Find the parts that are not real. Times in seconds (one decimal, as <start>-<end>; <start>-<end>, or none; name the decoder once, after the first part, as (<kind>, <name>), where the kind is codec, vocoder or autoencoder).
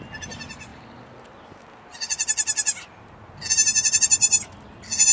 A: none